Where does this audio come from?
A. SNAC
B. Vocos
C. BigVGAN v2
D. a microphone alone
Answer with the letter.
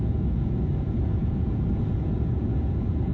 B